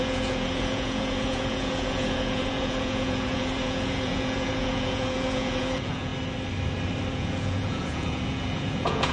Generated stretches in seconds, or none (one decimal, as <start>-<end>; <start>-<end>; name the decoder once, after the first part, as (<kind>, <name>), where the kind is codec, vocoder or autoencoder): 0.0-6.1 (vocoder, Vocos); 7.1-9.1